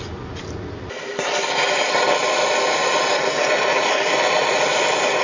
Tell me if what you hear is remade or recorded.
recorded